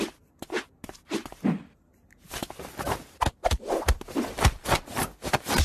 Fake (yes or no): no